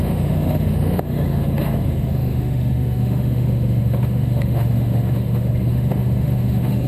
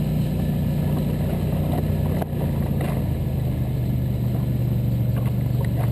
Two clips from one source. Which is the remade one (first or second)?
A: first